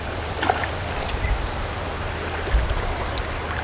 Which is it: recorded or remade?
recorded